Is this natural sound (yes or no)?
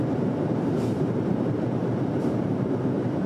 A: no